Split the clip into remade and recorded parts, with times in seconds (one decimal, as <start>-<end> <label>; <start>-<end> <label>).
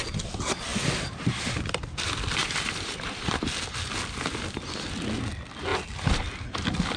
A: 0.0-2.4 recorded; 2.4-3.5 remade; 3.5-7.0 recorded